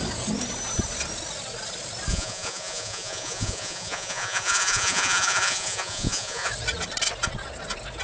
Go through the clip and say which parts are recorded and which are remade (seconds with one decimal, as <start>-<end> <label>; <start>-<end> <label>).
0.0-2.1 recorded; 2.1-6.5 remade; 6.5-8.0 recorded